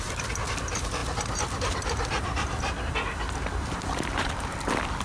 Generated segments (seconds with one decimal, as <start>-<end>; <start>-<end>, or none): 0.0-5.0